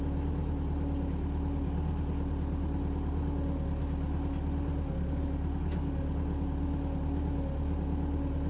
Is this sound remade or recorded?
recorded